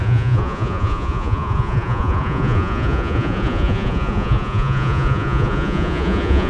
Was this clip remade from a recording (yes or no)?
yes